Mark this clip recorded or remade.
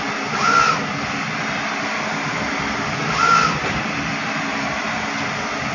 recorded